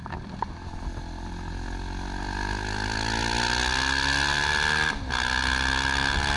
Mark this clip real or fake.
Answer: real